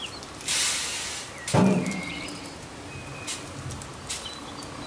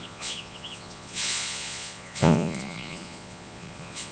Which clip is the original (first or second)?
first